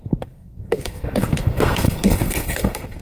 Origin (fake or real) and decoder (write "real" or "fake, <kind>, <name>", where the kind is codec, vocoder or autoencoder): fake, codec, SNAC